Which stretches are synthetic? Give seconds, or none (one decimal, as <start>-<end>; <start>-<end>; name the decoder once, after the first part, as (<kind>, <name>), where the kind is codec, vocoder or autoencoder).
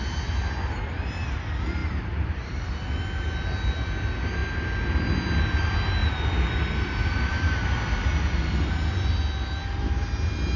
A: 1.8-2.7 (vocoder, BigVGAN v2); 6.0-7.5